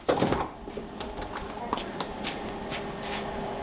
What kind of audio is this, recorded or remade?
recorded